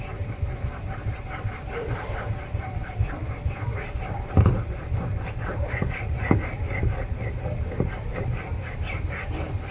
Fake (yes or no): no